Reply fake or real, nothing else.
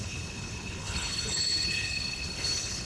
fake